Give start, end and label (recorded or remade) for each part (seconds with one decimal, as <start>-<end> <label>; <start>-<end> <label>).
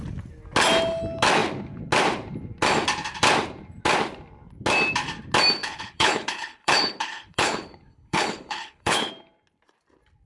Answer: 0.0-5.6 recorded; 5.6-9.1 remade; 9.1-10.3 recorded